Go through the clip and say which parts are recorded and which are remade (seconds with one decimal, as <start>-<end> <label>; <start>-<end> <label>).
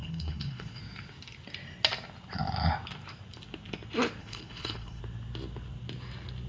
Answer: 0.0-0.8 remade; 0.8-4.2 recorded; 4.2-5.0 remade; 5.0-6.5 recorded